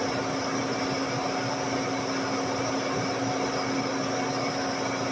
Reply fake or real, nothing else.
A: real